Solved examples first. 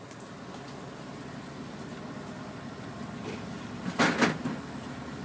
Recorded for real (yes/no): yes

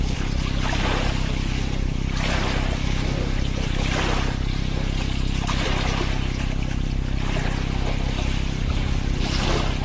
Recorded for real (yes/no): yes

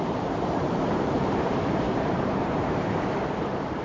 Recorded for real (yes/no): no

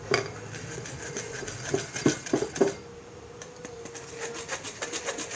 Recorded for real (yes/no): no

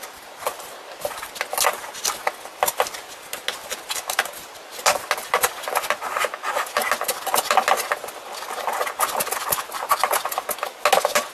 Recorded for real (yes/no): yes